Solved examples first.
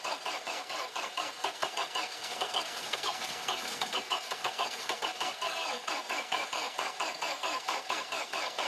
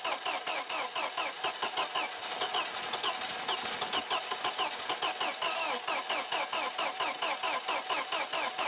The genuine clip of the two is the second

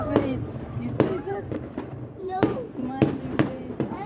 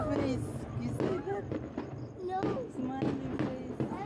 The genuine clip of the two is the second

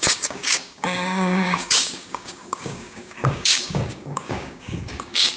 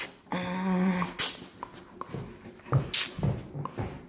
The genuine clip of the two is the second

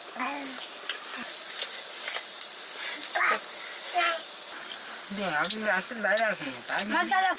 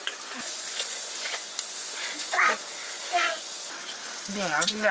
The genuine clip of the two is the first